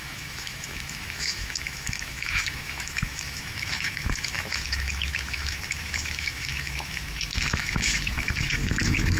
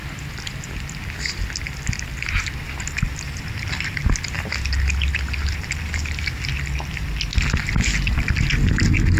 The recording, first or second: second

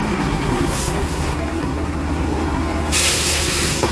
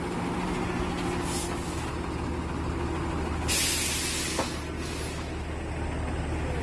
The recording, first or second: second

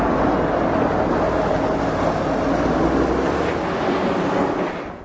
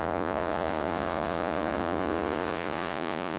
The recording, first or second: first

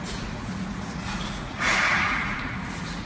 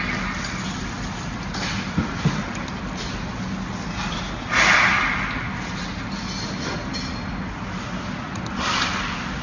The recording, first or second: second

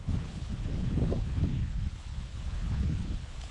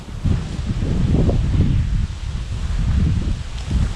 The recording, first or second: second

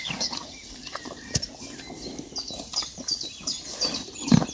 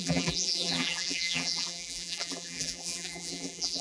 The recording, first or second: first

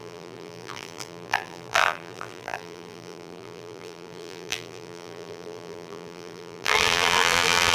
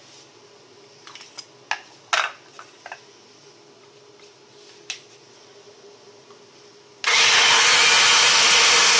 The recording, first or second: second